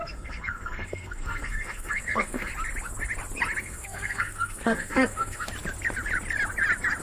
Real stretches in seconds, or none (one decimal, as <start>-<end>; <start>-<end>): 2.5-3.6; 5.5-7.0